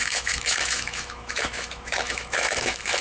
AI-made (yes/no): yes